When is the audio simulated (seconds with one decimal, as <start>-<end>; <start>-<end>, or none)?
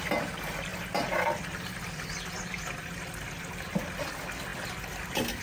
none